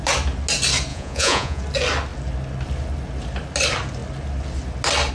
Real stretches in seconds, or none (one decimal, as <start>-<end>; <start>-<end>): 0.0-0.9; 1.6-5.1